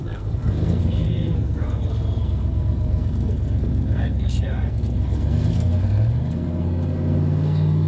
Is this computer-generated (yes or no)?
yes